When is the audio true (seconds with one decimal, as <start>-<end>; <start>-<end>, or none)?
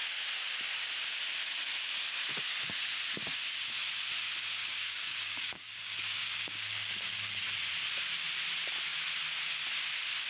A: 0.0-4.6; 7.4-10.3